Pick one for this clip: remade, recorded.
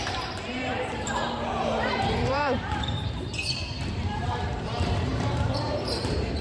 remade